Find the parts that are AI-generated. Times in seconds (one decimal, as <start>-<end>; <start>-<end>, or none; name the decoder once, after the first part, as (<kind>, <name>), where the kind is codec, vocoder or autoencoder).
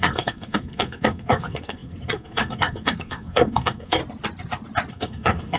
0.0-4.0 (codec, SNAC); 4.9-5.6